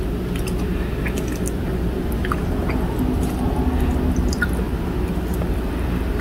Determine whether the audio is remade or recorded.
recorded